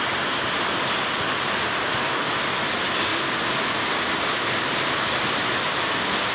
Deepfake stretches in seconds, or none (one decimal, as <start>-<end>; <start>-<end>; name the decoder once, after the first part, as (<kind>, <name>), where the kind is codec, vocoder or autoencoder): none